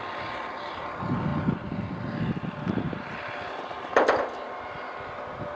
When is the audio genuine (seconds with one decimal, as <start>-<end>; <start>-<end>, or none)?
0.0-5.6